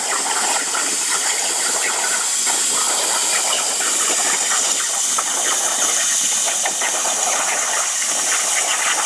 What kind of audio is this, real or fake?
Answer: real